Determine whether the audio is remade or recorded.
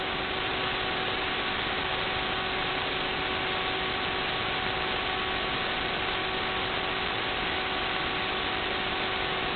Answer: recorded